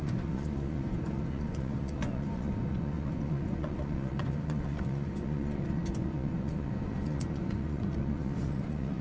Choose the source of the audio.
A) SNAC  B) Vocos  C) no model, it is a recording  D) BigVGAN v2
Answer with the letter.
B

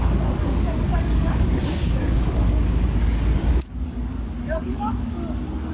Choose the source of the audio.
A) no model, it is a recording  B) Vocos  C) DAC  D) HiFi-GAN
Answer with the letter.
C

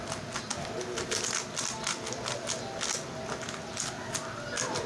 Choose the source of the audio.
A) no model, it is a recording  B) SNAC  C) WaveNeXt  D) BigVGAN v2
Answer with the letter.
A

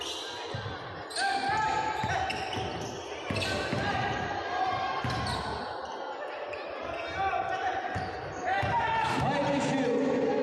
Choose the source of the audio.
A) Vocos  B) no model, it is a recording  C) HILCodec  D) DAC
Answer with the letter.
B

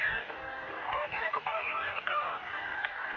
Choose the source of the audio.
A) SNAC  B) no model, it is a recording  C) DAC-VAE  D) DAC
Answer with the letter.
D